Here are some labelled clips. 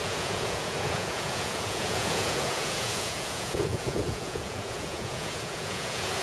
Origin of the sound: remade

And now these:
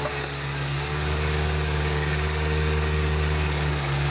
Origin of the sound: remade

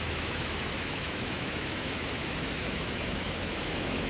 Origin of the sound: remade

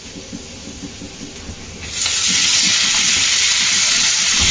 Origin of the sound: recorded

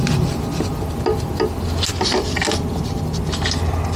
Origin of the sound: recorded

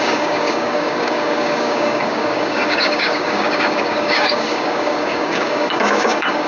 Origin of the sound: remade